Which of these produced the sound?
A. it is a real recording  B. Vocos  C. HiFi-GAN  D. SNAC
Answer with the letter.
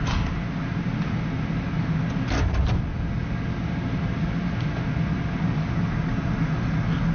A